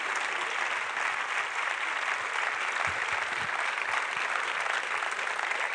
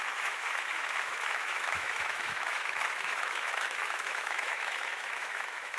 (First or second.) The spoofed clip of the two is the second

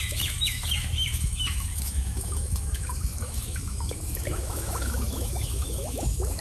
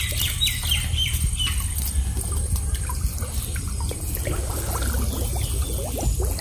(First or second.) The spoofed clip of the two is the first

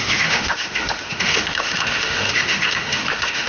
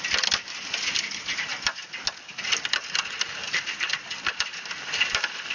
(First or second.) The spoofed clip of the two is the first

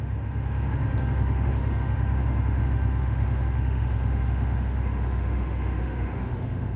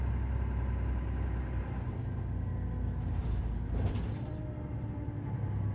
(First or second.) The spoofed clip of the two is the first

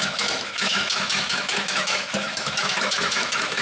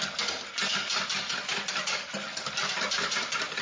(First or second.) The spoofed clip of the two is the first